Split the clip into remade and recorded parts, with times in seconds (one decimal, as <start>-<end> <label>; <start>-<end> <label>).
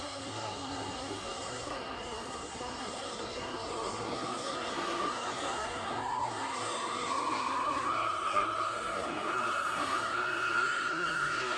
0.0-11.6 remade